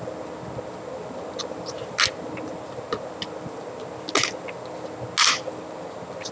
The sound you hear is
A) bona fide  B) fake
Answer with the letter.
A